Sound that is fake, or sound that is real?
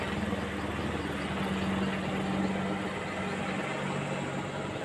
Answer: real